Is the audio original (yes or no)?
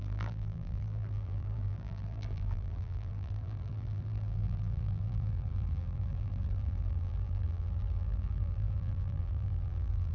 no